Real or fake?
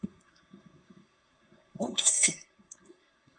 fake